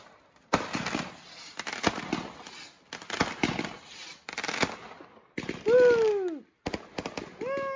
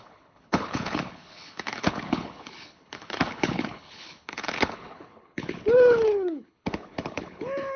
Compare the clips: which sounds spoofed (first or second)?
second